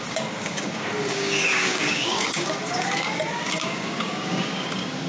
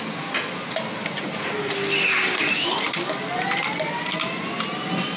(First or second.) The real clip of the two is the second